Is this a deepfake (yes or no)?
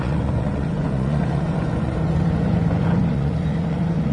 yes